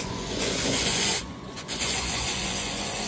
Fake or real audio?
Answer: fake